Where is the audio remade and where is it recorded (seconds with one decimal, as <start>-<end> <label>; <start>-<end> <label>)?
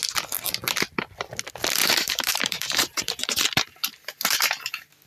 0.0-1.8 recorded; 1.8-4.4 remade; 4.4-5.1 recorded